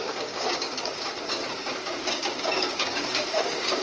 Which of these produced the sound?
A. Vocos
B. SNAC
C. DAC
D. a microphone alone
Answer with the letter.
C